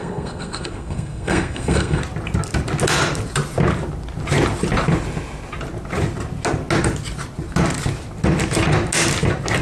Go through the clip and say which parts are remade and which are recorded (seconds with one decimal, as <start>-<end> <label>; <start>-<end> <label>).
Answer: 0.0-2.0 remade; 2.0-9.6 recorded